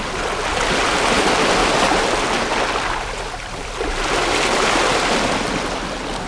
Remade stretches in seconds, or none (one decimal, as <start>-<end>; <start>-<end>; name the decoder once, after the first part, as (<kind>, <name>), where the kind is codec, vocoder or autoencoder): none